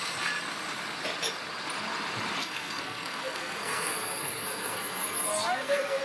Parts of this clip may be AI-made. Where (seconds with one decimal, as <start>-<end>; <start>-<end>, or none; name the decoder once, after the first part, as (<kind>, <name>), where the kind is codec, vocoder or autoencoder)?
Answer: 2.4-6.0 (codec, SNAC)